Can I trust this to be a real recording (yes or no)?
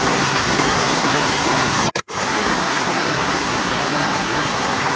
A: no